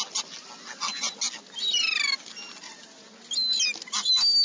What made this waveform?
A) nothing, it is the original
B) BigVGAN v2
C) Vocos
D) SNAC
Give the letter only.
A